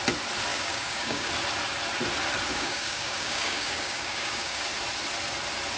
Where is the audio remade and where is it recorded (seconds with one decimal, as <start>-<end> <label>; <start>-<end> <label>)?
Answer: 0.0-0.5 recorded; 0.5-1.3 remade; 1.3-2.5 recorded; 2.5-4.7 remade; 4.7-5.8 recorded